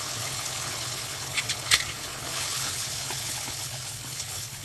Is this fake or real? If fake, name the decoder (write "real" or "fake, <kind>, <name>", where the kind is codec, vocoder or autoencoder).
fake, codec, HILCodec